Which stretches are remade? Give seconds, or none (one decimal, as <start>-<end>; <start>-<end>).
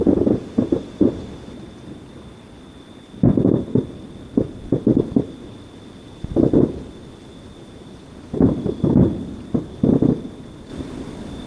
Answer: none